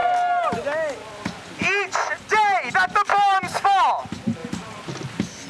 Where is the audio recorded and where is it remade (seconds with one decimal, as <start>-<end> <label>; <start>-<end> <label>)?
0.0-4.4 recorded; 4.4-4.9 remade; 4.9-5.5 recorded